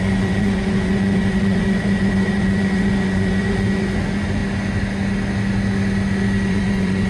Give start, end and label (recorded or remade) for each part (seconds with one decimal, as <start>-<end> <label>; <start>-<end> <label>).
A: 0.0-4.4 remade; 4.4-6.5 recorded; 6.5-7.1 remade